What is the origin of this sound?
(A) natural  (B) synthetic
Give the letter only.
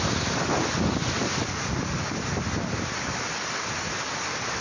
A